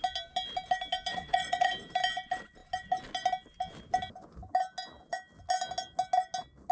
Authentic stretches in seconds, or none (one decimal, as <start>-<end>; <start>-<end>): 0.0-1.1; 1.7-6.7